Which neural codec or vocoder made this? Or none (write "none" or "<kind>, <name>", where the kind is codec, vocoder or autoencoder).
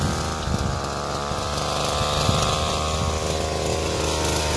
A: none